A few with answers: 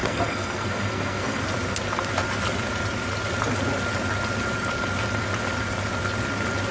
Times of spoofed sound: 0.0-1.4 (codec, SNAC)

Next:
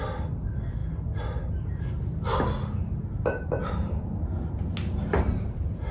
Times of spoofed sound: none

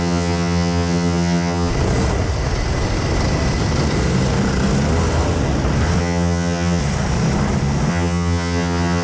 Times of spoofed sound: 0.0-1.7 (vocoder, HiFi-GAN); 6.0-6.8; 7.9-9.0

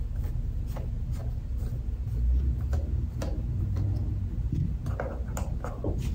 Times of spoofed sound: none

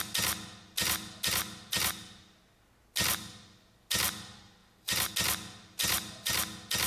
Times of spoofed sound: 4.6-5.1 (vocoder, BigVGAN v2); 5.8-6.3

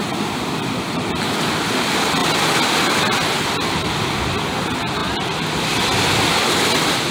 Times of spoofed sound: none